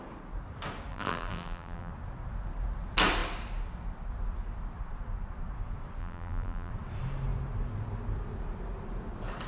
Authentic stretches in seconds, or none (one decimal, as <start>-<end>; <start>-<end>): 0.0-0.9; 1.9-6.0; 6.7-9.5